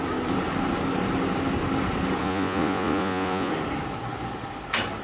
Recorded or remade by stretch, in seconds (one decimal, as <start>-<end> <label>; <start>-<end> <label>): 0.0-2.2 recorded; 2.2-3.5 remade; 3.5-5.0 recorded

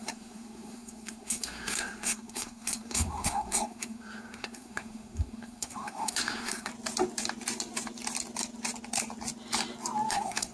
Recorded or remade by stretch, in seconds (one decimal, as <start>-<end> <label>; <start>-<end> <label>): 0.0-6.7 remade; 6.7-10.1 recorded; 10.1-10.5 remade